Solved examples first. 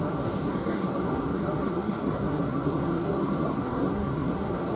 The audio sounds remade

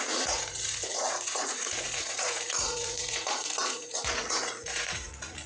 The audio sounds remade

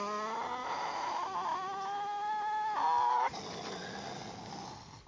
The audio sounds recorded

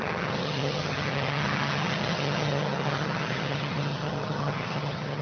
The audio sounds remade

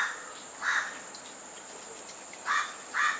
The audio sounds recorded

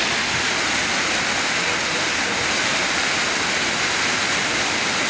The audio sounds recorded